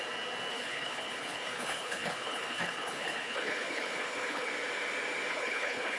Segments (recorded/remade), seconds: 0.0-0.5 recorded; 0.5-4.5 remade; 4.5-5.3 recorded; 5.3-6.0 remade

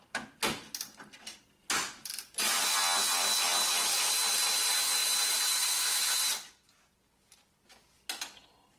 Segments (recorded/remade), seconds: 0.0-1.8 recorded; 1.8-2.6 remade; 2.6-5.0 recorded; 5.0-7.0 remade; 7.0-8.8 recorded

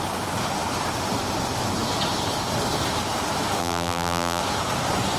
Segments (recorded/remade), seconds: 0.0-3.6 recorded; 3.6-4.4 remade; 4.4-5.2 recorded

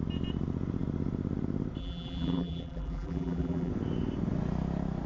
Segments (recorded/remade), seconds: 0.0-1.8 recorded; 1.8-3.7 remade; 3.7-5.1 recorded

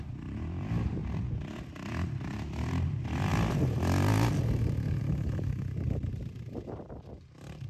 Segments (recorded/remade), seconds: 0.0-7.7 recorded

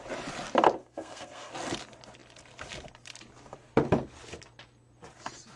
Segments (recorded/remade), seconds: 0.0-0.8 recorded; 0.8-1.5 remade; 1.5-5.6 recorded

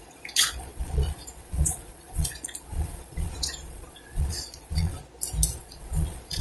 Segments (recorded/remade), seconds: 0.0-5.0 remade; 5.0-5.6 recorded; 5.6-6.4 remade

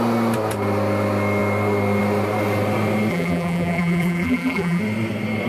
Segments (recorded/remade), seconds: 0.0-3.1 recorded; 3.1-4.8 remade; 4.8-5.5 recorded